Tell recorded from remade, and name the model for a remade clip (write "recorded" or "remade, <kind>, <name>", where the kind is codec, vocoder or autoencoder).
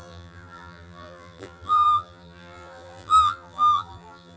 remade, vocoder, BigVGAN v2